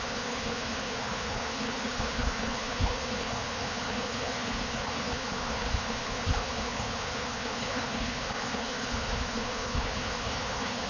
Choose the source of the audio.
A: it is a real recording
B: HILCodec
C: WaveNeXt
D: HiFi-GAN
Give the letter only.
B